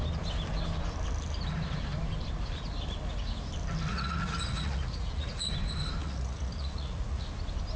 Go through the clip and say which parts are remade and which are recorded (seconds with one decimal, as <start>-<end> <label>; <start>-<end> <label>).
0.0-3.9 recorded; 3.9-5.5 remade; 5.5-6.0 recorded; 6.0-7.3 remade; 7.3-7.8 recorded